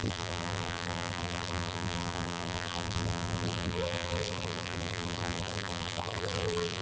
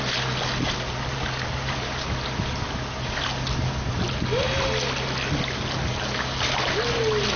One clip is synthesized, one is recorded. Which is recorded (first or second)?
second